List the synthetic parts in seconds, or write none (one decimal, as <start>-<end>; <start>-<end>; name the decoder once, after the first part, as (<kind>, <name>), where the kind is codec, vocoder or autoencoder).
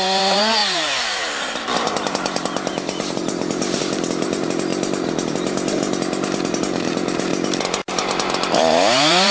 0.0-7.3 (vocoder, BigVGAN v2); 7.9-9.3